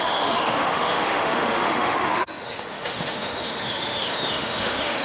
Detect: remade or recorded remade